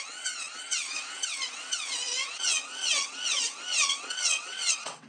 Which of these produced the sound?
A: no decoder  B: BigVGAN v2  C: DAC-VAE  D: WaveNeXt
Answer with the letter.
D